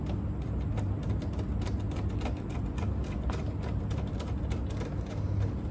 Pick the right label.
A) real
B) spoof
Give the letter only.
A